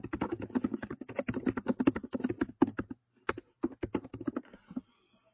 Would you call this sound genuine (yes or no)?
yes